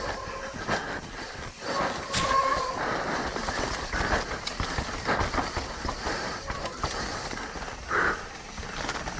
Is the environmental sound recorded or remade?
recorded